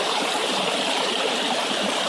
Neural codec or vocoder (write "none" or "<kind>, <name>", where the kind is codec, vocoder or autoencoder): vocoder, BigVGAN v2